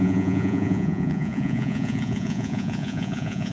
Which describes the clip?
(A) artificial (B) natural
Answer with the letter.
A